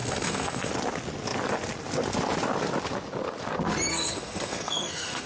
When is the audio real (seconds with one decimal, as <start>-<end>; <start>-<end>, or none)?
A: 0.7-3.9